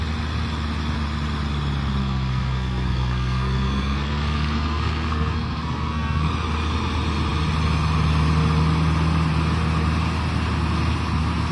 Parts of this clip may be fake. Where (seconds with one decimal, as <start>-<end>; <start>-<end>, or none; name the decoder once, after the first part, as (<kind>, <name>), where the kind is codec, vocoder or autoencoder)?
2.0-6.3 (codec, SNAC)